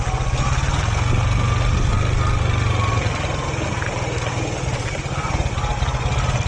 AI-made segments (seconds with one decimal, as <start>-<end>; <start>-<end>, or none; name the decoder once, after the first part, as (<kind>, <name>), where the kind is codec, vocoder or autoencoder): none